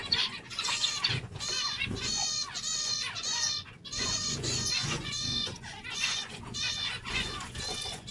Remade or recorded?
remade